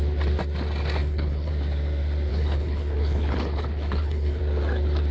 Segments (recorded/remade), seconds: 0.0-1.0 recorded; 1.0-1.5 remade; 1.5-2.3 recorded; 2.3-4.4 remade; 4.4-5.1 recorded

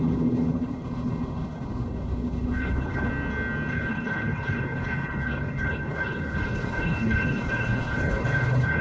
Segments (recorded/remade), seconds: 0.0-3.1 remade; 3.1-3.7 recorded; 3.7-8.8 remade

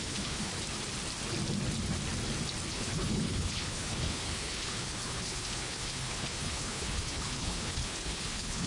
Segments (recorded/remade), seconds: 0.0-0.5 remade; 0.5-2.7 recorded; 2.7-8.7 remade